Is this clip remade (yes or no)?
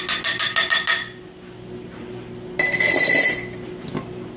no